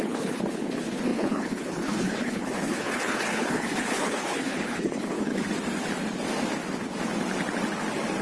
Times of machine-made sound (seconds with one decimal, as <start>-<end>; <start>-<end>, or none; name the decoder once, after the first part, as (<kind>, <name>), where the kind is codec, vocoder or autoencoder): 0.0-5.3 (codec, HILCodec)